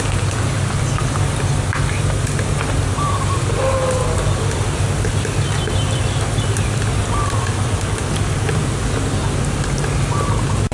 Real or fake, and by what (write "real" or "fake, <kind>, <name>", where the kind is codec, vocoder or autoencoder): real